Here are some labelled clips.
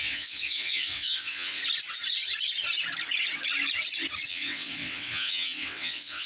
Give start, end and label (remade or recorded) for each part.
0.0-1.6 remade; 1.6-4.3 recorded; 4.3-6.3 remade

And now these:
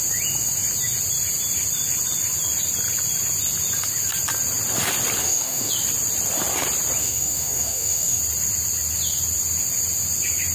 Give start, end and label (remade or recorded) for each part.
0.0-5.2 recorded; 5.2-5.7 remade; 5.7-7.0 recorded; 7.0-8.2 remade; 8.2-10.5 recorded

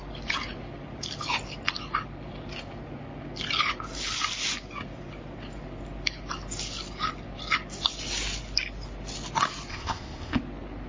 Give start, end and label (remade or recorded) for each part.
0.0-9.7 recorded; 9.7-10.4 remade; 10.4-10.9 recorded

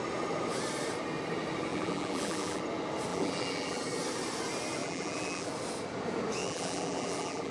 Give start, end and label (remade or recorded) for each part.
0.0-1.7 recorded; 1.7-2.6 remade; 2.6-3.1 recorded; 3.1-3.8 remade; 3.8-4.8 recorded; 4.8-5.5 remade; 5.5-6.4 recorded; 6.4-7.5 remade

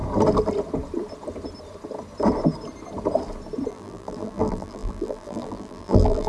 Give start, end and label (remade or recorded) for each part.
0.0-3.7 recorded; 3.7-6.3 remade